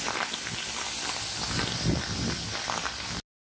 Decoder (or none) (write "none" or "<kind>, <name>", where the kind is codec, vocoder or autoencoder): none